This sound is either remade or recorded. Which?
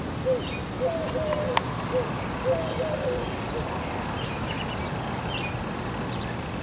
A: recorded